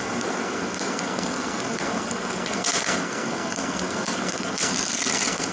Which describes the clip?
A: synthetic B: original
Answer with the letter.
A